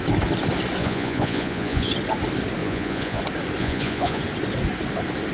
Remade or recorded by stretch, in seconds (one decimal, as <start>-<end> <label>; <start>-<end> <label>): 0.0-0.8 recorded; 0.8-1.9 remade; 1.9-2.6 recorded; 2.6-3.2 remade; 3.2-3.6 recorded; 3.6-4.2 remade; 4.2-5.3 recorded

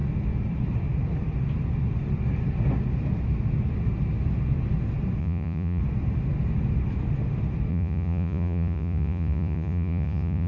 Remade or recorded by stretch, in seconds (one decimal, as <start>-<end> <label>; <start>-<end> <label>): 0.0-5.2 recorded; 5.2-5.8 remade; 5.8-7.7 recorded; 7.7-10.5 remade

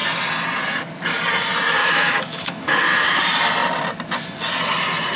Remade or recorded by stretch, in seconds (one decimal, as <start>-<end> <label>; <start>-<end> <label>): 0.0-1.8 recorded; 1.8-3.2 remade; 3.2-5.2 recorded

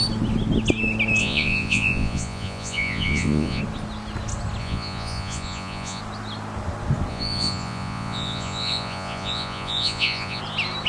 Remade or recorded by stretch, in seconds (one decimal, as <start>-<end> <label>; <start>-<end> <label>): 0.0-1.2 recorded; 1.2-3.6 remade; 3.6-4.6 recorded; 4.6-6.0 remade; 6.0-7.1 recorded; 7.1-10.4 remade; 10.4-10.9 recorded

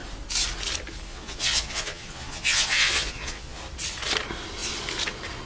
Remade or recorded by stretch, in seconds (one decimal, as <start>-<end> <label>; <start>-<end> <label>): 0.0-1.1 recorded; 1.1-3.6 remade; 3.6-5.5 recorded

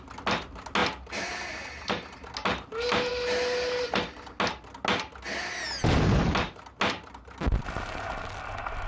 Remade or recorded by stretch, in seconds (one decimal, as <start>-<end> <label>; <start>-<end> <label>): 0.0-8.9 recorded

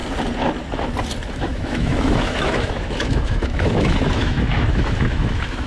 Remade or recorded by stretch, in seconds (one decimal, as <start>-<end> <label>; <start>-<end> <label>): 0.0-1.3 recorded; 1.3-5.7 remade

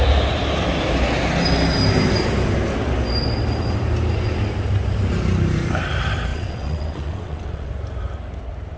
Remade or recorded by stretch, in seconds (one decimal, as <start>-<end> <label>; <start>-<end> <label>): 0.0-6.3 recorded; 6.3-7.7 remade; 7.7-8.8 recorded